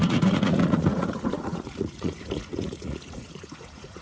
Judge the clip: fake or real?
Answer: fake